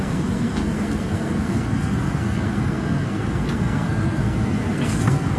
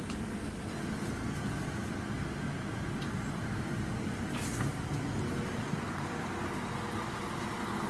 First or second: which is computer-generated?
first